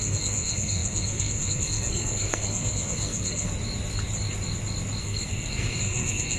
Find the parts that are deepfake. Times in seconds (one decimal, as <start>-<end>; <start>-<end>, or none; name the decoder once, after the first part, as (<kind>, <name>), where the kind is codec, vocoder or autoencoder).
0.0-3.5 (codec, SNAC); 5.0-6.4